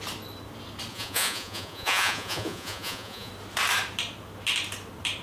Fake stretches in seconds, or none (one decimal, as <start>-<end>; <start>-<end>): 0.9-3.3